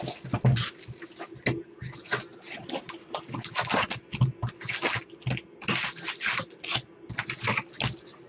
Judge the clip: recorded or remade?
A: recorded